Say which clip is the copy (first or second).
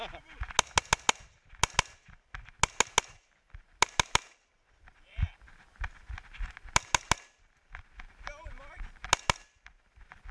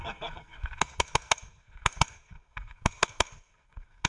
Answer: second